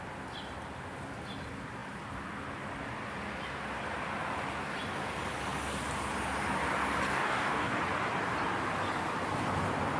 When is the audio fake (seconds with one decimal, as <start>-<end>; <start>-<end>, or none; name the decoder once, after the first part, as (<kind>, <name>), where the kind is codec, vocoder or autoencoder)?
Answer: 7.1-7.8 (codec, DAC)